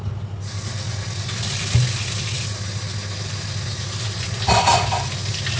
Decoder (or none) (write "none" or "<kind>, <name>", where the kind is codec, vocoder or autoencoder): none